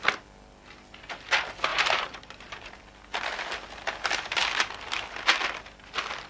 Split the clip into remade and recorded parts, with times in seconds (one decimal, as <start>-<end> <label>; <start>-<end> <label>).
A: 0.0-1.7 recorded; 1.7-2.8 remade; 2.8-6.3 recorded